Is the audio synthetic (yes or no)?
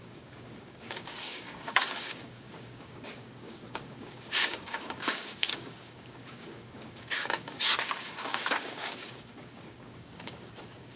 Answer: yes